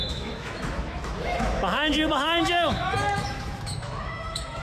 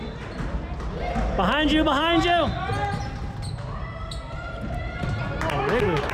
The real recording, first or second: second